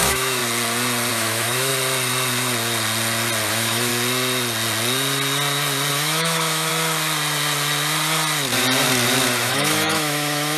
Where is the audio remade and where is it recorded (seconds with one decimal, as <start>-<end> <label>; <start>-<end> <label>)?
0.0-0.4 remade; 0.4-1.1 recorded; 1.1-1.7 remade; 1.7-3.5 recorded; 3.5-3.9 remade; 3.9-5.9 recorded; 5.9-6.7 remade; 6.7-9.4 recorded; 9.4-10.6 remade

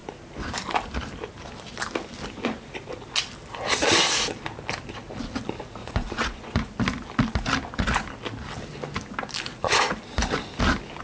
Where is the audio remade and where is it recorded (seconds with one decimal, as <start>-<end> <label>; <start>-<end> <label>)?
0.0-5.8 recorded; 5.8-6.6 remade; 6.6-11.0 recorded